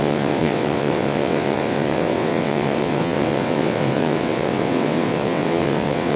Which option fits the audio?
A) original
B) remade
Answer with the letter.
B